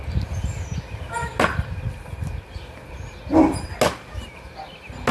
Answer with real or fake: real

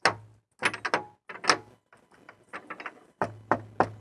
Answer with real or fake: real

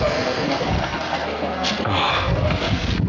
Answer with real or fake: fake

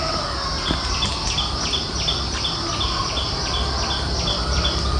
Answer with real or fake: real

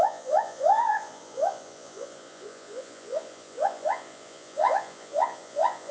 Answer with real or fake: fake